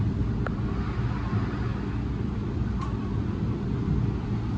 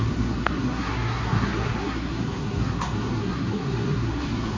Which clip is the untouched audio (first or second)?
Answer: first